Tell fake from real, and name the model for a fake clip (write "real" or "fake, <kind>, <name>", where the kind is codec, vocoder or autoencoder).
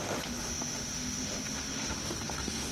fake, autoencoder, DAC-VAE